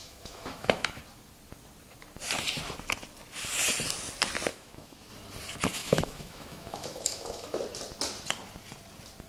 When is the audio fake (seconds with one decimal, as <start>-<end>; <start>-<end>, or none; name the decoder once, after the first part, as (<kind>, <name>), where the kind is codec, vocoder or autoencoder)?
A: 0.0-1.0 (autoencoder, DAC-VAE); 4.5-5.1; 5.8-7.6